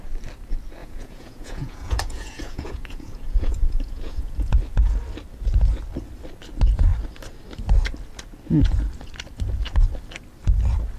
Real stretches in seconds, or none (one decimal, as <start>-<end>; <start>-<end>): 0.0-0.8; 4.6-11.0